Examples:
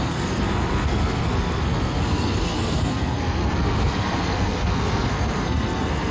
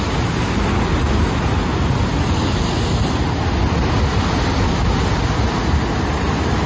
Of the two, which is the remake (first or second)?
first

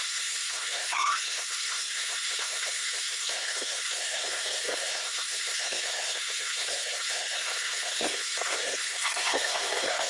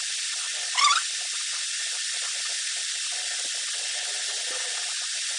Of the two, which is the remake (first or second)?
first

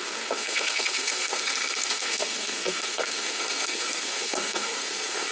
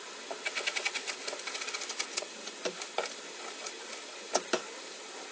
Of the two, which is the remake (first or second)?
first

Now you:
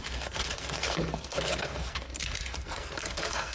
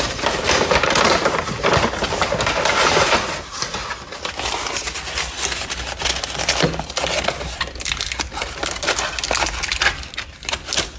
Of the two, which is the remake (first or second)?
first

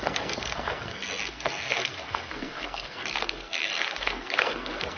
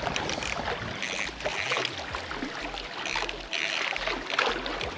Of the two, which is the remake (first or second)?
first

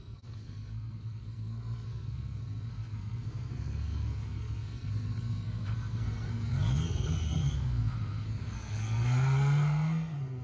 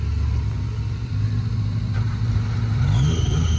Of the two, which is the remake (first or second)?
first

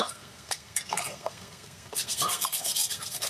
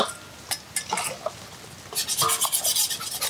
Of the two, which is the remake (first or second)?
first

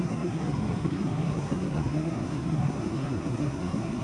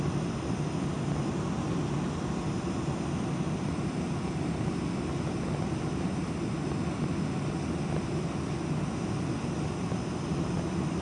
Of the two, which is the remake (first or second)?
first